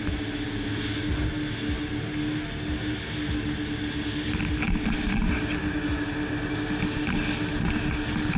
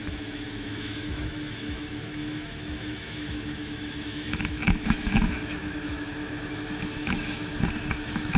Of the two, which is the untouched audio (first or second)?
first